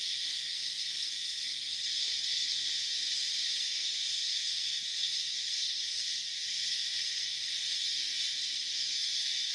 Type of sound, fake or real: fake